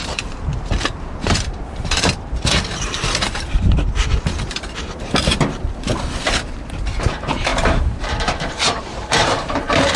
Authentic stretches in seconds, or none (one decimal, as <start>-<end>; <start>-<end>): none